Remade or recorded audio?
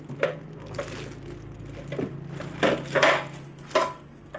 recorded